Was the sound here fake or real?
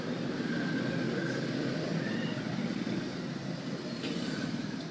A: real